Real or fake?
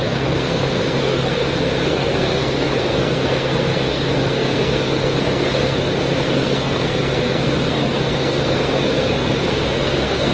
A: fake